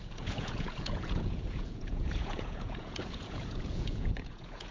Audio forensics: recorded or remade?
remade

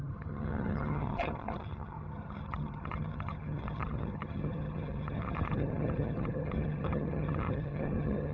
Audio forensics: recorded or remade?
remade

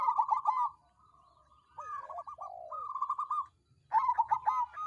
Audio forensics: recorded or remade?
recorded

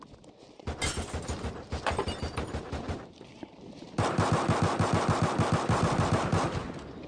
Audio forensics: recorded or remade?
recorded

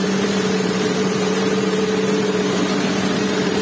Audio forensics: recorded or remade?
remade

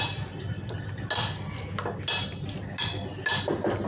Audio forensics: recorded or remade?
recorded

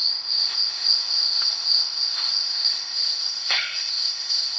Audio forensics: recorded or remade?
remade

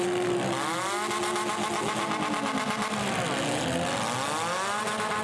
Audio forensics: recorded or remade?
recorded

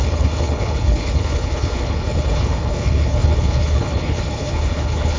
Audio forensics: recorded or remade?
remade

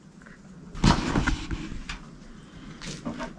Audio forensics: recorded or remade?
recorded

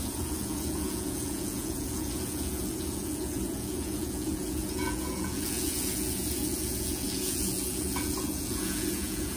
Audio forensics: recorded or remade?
remade